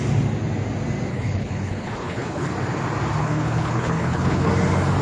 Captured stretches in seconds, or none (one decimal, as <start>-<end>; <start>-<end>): 0.0-1.1; 2.5-3.2; 4.5-5.0